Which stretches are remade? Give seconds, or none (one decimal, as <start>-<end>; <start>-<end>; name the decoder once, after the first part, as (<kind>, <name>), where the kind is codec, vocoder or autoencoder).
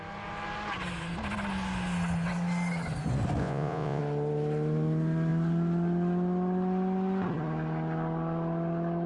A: 3.4-4.0 (vocoder, Vocos)